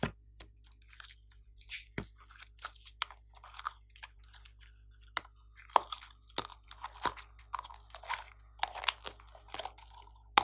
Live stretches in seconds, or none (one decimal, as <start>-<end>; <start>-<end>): 0.0-10.4